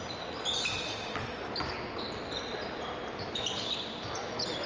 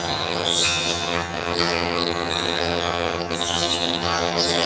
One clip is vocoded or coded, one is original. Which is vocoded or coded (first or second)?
second